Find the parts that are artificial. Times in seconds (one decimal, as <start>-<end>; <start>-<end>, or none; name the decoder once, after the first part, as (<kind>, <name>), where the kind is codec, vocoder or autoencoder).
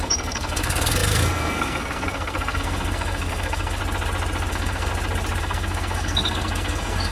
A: 0.0-3.8 (codec, SNAC); 4.5-4.9; 5.4-7.1